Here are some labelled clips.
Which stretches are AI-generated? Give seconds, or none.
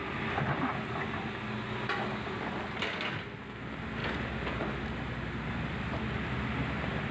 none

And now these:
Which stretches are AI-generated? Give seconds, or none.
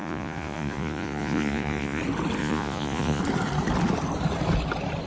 0.0-2.0 (vocoder, Vocos); 2.4-3.2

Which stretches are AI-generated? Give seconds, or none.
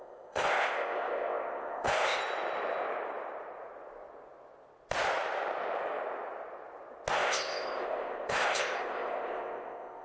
0.0-2.2 (codec, ZipCodec); 7.1-10.0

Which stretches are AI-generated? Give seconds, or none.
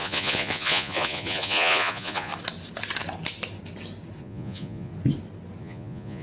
0.0-2.3 (vocoder, Vocos); 4.2-4.9; 5.6-6.2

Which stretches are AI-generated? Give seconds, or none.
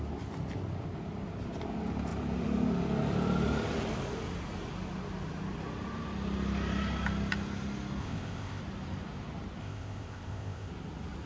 8.0-8.6 (codec, ZipCodec); 9.6-10.7